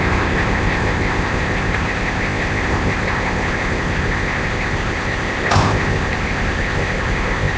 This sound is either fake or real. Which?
fake